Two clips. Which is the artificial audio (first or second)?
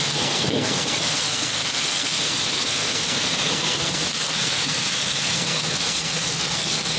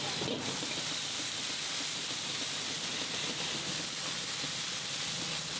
first